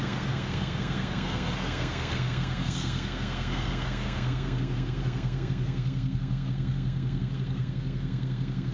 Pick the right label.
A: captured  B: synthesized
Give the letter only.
B